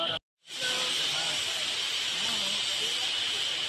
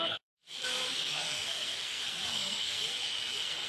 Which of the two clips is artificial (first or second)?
second